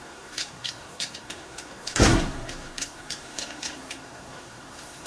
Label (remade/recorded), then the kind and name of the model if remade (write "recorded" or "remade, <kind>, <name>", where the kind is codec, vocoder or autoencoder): remade, codec, SNAC